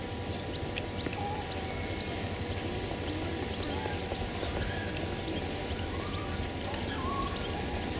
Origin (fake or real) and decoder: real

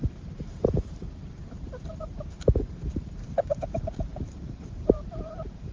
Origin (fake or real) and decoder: fake, vocoder, BigVGAN v2